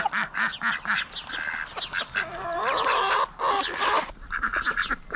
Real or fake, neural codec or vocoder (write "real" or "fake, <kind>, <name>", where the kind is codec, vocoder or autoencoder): real